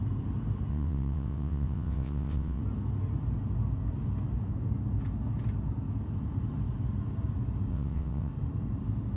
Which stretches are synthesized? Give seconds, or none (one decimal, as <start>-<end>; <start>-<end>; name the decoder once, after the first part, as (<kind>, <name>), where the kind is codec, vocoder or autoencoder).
0.7-2.6 (vocoder, WaveNeXt); 7.7-8.3